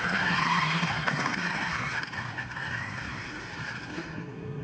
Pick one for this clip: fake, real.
fake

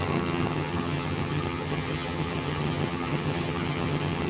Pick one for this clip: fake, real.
fake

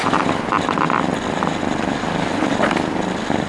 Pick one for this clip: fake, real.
real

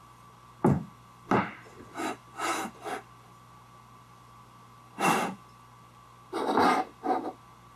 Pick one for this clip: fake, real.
real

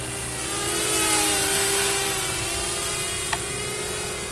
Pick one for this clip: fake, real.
real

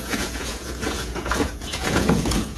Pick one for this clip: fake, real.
fake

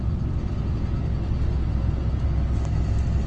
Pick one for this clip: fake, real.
real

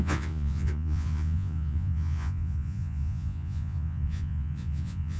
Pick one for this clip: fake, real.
fake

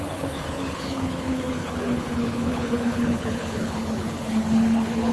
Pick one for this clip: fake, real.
fake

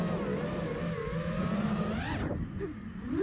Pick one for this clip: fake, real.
real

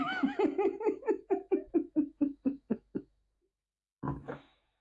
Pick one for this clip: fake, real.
fake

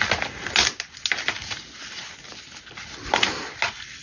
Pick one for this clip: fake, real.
real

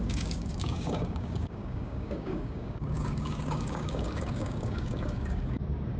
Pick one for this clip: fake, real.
fake